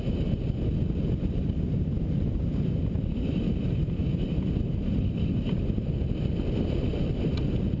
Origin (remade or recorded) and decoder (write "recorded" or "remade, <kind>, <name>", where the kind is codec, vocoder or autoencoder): recorded